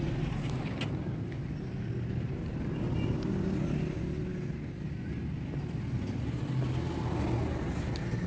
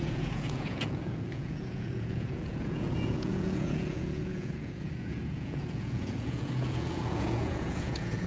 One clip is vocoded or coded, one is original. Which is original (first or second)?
first